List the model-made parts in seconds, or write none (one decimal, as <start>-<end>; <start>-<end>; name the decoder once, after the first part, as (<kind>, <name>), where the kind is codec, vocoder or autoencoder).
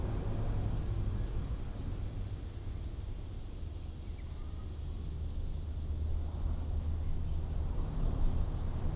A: none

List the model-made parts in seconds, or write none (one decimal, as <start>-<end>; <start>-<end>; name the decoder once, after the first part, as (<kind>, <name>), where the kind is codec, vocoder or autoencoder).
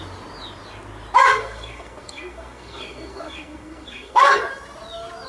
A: 1.3-4.4 (codec, SNAC)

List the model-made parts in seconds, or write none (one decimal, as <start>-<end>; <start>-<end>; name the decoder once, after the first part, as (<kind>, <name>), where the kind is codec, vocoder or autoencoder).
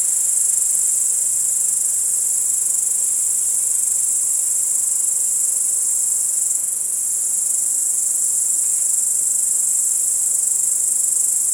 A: 6.0-9.0 (vocoder, Vocos)